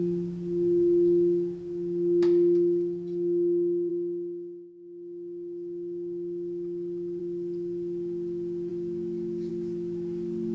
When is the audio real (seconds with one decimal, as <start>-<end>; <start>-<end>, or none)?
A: 0.0-10.5

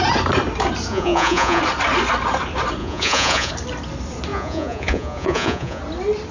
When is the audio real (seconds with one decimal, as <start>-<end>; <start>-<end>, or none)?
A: 0.0-0.9; 1.6-2.8; 3.5-4.3; 5.8-6.3

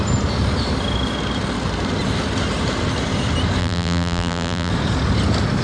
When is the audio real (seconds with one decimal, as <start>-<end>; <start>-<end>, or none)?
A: 0.0-3.6; 4.7-5.6

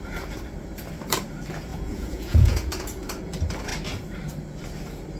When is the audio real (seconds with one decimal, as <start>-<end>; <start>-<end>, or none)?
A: 0.0-1.7; 2.7-5.2